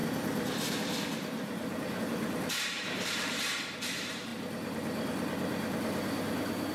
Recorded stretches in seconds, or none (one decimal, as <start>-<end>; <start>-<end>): 4.3-6.7